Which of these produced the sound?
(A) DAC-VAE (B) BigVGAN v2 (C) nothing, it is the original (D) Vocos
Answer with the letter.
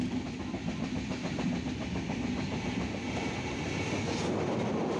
C